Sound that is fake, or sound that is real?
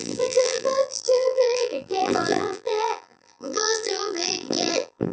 fake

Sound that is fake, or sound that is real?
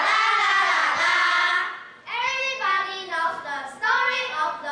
real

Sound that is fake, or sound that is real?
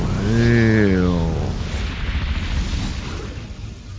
real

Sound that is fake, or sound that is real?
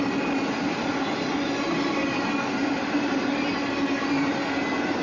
real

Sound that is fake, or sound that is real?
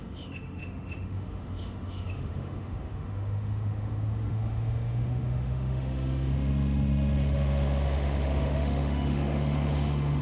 fake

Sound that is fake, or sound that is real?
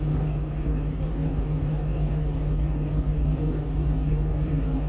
fake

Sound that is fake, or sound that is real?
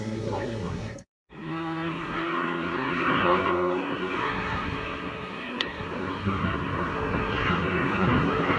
fake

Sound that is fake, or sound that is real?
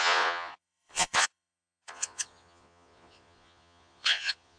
fake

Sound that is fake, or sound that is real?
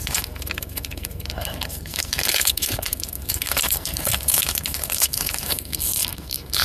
fake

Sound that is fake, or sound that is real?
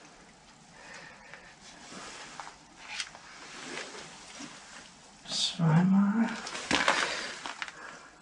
real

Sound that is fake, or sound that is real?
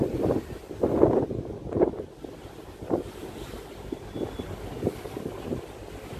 real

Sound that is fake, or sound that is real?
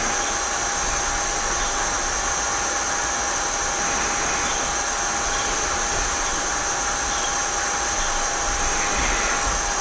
real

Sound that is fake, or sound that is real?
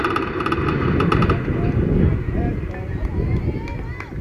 real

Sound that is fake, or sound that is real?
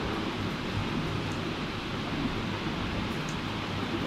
real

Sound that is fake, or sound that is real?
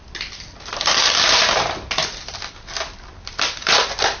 real